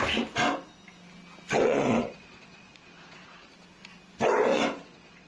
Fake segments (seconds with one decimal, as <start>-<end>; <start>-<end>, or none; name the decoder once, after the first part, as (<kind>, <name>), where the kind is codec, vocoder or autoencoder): 1.6-3.5 (vocoder, WaveNeXt); 4.5-5.3